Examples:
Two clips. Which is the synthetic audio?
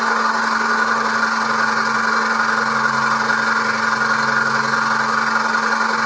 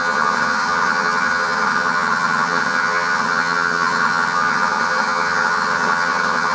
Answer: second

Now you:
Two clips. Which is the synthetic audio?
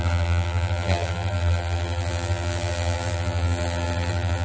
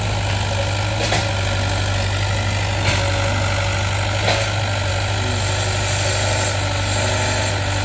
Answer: first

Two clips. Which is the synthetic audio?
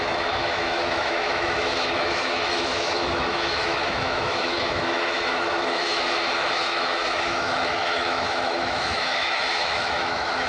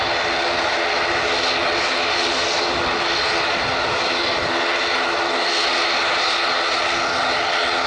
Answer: first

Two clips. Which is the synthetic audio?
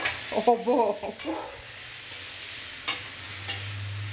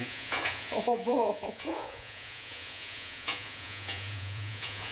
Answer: second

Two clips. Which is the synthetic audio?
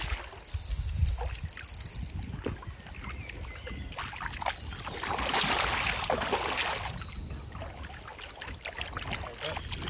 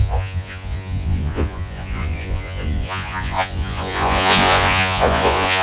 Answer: second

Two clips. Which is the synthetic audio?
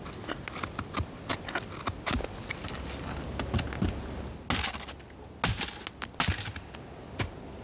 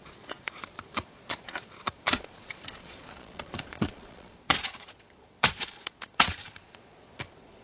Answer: second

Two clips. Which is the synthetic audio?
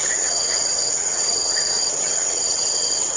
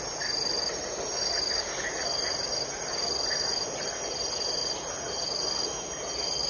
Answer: first